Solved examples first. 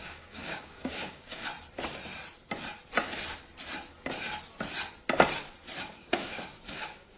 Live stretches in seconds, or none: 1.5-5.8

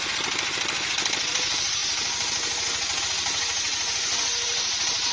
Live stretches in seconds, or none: 0.0-5.1

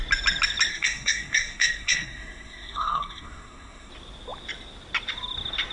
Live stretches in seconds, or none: 0.0-0.7; 3.9-5.7

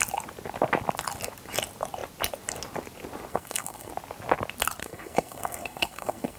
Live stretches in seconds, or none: 0.0-3.3; 3.9-4.8

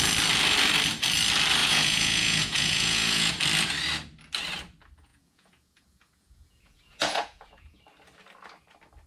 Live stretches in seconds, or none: 0.0-1.6; 3.3-5.1; 7.8-9.1